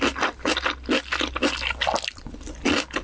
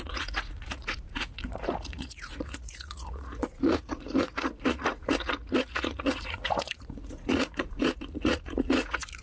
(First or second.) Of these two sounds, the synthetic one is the second